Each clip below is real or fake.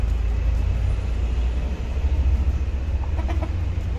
real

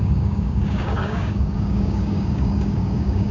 fake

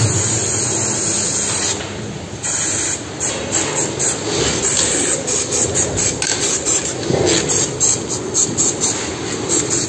real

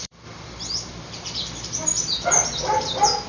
fake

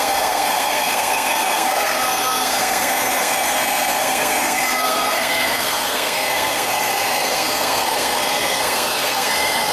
fake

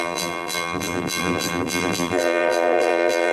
fake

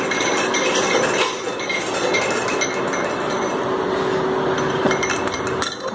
real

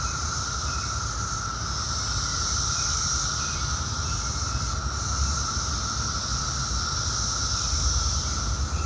real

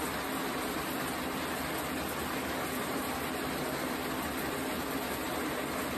real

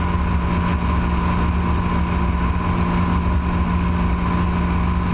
real